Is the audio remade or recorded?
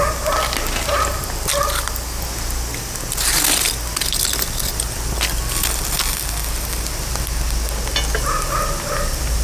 recorded